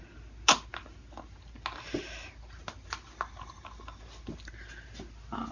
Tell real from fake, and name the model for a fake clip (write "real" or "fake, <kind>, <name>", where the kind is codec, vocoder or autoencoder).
real